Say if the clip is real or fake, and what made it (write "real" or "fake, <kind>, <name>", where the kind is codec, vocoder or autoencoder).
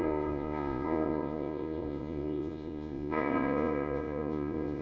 fake, vocoder, Vocos